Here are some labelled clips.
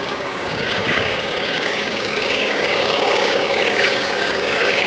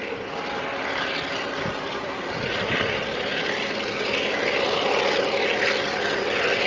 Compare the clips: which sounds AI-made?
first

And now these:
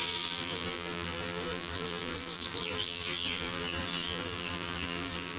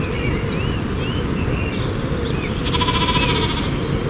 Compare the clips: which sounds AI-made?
first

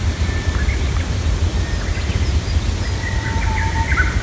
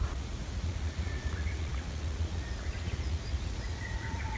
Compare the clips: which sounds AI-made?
second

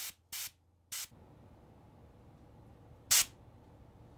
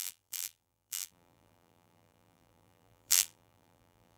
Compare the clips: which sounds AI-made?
second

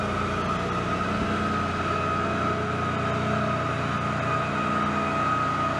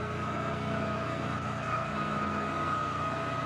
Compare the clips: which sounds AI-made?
second